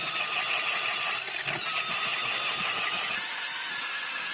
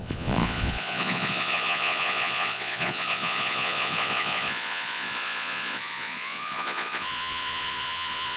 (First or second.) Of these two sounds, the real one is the first